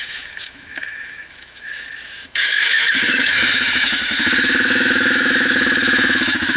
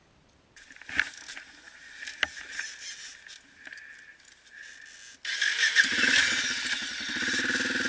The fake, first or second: first